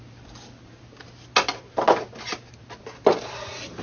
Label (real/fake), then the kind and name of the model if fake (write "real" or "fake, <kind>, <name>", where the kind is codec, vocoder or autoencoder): real